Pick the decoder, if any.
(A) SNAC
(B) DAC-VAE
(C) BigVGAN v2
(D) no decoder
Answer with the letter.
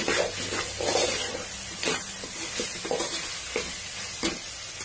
D